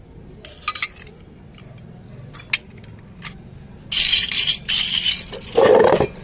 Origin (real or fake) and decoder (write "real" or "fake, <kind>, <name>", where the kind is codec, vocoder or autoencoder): real